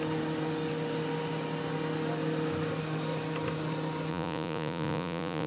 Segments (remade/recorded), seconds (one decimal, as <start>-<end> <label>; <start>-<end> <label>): 0.0-4.1 recorded; 4.1-5.5 remade